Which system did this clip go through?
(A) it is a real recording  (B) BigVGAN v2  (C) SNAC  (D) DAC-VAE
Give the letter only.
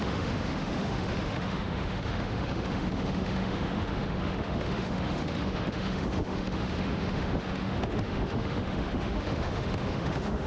D